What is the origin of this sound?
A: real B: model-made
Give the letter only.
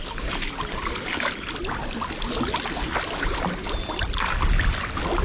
A